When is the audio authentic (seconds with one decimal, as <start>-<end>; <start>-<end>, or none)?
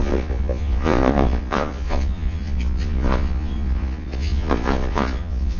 none